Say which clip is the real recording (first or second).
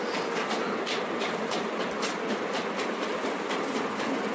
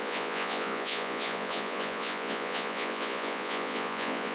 first